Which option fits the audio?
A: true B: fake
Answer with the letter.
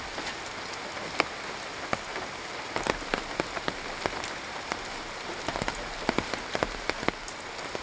A